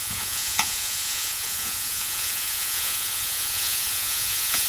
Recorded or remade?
remade